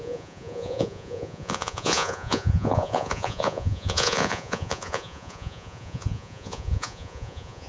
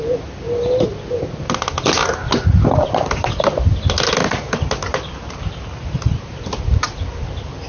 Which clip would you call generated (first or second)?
first